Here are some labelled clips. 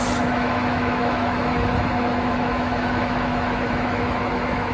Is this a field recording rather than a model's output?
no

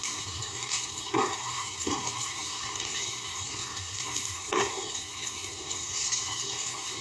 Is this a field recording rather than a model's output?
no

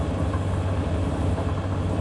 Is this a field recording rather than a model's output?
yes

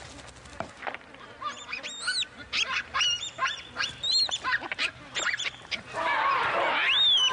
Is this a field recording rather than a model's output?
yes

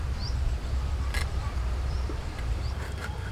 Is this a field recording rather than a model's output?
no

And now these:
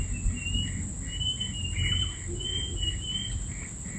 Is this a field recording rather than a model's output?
yes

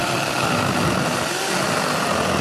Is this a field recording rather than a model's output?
yes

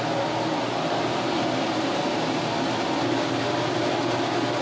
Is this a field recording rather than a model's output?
yes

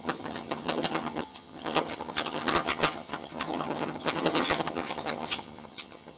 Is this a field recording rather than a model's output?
no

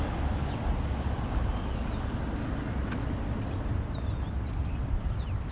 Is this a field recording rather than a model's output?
yes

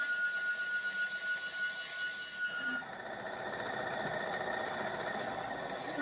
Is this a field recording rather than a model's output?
yes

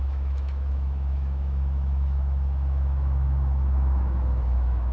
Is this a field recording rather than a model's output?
no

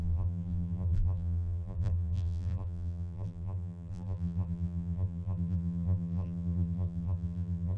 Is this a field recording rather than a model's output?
no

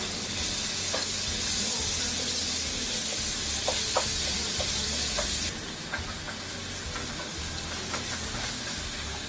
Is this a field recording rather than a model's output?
yes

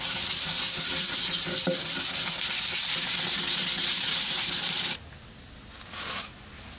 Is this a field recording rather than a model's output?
yes